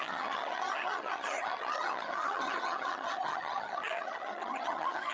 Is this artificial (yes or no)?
yes